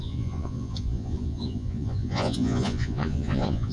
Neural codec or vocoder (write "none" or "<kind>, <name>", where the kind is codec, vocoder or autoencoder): vocoder, Vocos